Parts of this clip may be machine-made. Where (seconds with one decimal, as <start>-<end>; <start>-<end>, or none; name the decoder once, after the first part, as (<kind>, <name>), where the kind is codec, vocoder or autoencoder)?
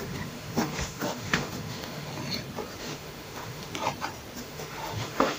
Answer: 0.0-2.1 (autoencoder, DAC-VAE); 2.8-3.7; 4.4-5.4